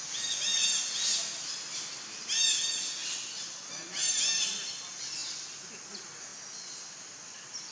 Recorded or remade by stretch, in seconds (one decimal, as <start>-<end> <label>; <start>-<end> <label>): 0.0-7.7 recorded